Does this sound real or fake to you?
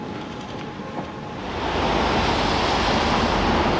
real